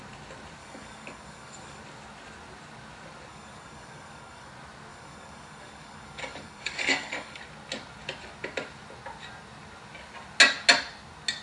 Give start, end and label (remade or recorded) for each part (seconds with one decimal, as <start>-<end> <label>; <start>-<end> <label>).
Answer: 0.0-0.6 recorded; 0.6-1.8 remade; 1.8-3.3 recorded; 3.3-4.5 remade; 4.5-4.9 recorded; 4.9-7.4 remade; 7.4-11.4 recorded